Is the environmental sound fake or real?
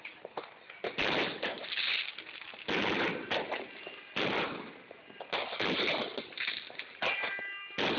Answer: real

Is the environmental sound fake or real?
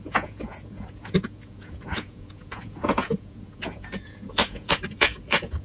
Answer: fake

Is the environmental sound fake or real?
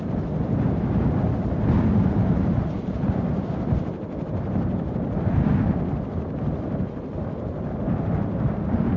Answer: real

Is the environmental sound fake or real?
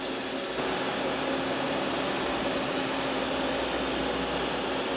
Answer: real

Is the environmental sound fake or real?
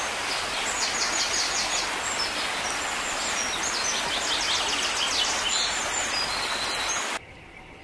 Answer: real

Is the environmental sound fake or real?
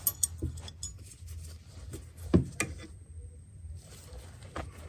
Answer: real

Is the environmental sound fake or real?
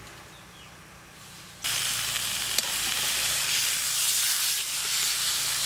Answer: real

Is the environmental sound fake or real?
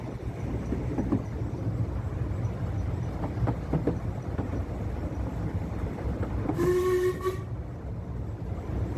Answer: real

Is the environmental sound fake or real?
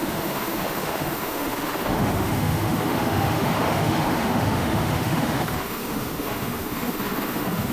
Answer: fake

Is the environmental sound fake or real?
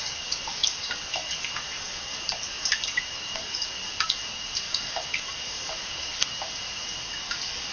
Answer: fake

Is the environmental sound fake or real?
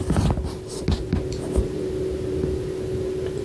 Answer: real